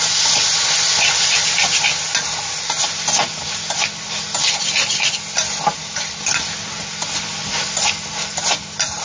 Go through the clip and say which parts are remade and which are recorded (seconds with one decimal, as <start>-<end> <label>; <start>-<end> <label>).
0.0-9.0 recorded